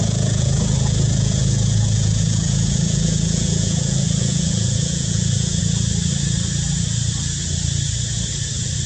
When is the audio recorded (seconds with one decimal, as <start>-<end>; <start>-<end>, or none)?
5.6-8.9